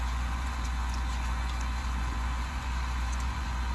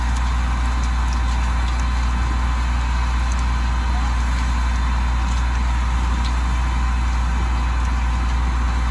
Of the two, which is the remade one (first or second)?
first